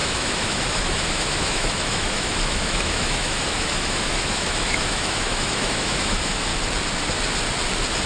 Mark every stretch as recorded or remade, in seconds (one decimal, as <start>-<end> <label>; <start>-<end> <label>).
0.0-6.5 remade; 6.5-8.1 recorded